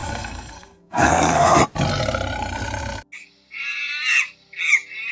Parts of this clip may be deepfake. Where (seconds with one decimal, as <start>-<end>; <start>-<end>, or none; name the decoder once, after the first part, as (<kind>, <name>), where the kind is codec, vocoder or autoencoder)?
0.0-1.6 (codec, SNAC)